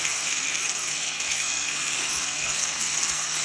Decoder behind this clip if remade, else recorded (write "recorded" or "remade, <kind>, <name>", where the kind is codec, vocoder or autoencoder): remade, codec, SNAC